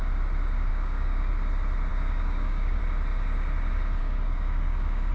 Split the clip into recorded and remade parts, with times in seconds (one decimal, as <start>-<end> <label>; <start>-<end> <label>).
0.0-0.7 recorded; 0.7-1.3 remade; 1.3-1.9 recorded; 1.9-2.8 remade; 2.8-4.0 recorded; 4.0-5.1 remade